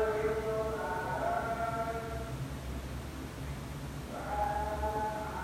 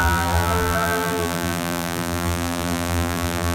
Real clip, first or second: first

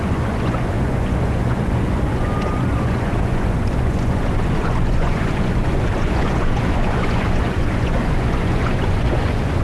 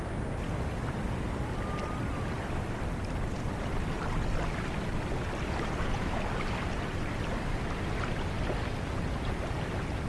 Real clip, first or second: second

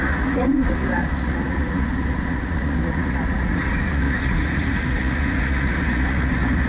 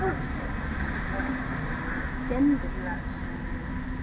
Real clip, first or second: second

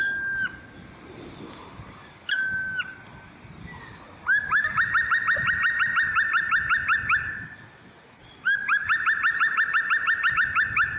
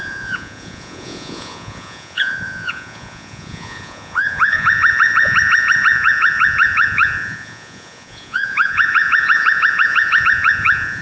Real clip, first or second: first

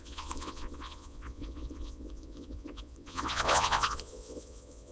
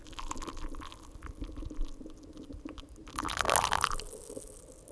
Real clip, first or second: second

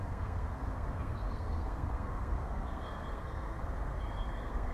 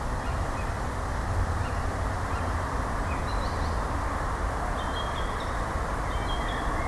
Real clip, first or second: second